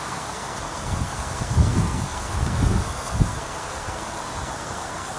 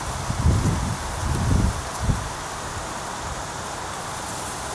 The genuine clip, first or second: second